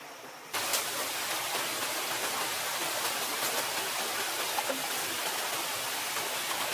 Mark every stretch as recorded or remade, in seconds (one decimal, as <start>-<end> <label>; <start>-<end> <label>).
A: 0.0-6.7 recorded